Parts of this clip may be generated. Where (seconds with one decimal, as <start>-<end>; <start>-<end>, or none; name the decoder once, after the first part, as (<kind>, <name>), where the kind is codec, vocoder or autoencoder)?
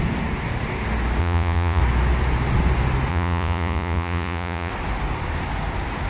1.2-1.8 (vocoder, Vocos); 3.1-4.7